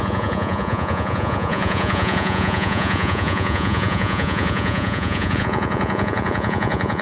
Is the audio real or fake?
fake